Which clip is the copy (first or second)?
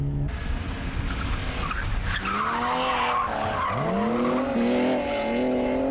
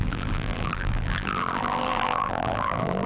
second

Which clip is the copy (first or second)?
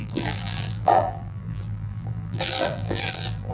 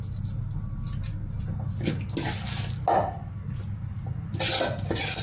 first